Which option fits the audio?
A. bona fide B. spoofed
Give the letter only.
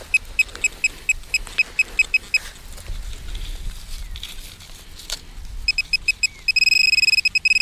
A